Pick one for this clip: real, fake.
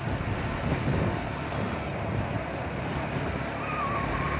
real